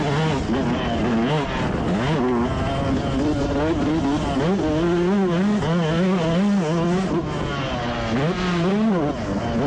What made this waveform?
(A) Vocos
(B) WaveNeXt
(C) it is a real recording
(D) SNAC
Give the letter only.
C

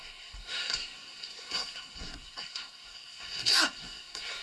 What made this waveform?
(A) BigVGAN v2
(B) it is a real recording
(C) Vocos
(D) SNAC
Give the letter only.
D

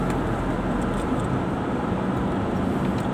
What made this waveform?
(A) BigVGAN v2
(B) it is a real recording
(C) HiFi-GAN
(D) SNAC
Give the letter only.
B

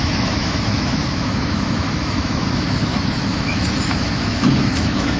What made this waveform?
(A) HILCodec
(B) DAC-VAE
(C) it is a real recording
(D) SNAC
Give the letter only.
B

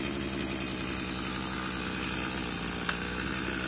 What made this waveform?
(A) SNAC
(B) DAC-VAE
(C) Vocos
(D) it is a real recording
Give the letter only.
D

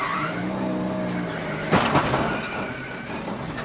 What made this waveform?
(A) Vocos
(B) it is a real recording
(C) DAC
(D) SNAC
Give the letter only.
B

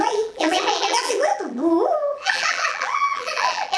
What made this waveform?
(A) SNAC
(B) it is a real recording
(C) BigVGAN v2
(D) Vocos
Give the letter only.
C